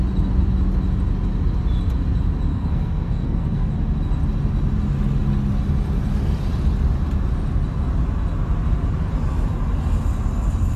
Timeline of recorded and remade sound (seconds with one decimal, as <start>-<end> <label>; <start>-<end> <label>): 0.0-2.5 recorded; 2.5-3.7 remade; 3.7-10.8 recorded